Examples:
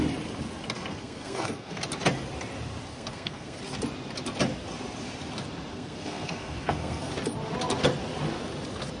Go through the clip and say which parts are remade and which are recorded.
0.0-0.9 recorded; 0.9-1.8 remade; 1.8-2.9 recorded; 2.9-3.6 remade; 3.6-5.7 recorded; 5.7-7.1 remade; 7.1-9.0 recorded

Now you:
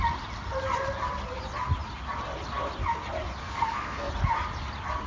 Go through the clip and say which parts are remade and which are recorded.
0.0-3.4 recorded; 3.4-4.1 remade; 4.1-5.1 recorded

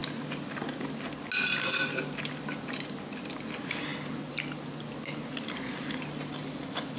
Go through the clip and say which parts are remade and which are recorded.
0.0-7.0 recorded

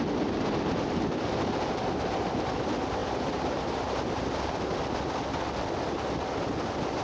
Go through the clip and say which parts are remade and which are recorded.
0.0-7.0 recorded

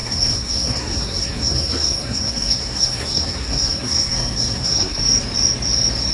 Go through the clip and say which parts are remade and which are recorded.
0.0-5.0 remade; 5.0-6.1 recorded

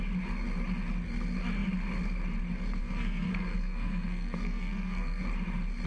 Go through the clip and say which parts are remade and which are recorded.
0.0-2.8 recorded; 2.8-5.2 remade; 5.2-5.9 recorded

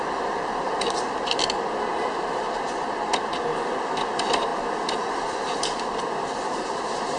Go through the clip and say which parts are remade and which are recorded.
0.0-7.2 recorded

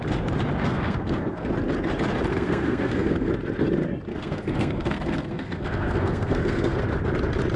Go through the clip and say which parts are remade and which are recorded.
0.0-0.6 recorded; 0.6-1.5 remade; 1.5-2.3 recorded; 2.3-3.3 remade; 3.3-4.1 recorded; 4.1-6.8 remade; 6.8-7.6 recorded